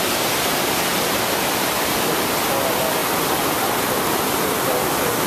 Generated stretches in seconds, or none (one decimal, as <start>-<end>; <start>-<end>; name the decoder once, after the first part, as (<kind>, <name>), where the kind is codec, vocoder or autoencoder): none